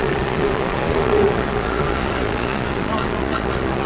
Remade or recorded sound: remade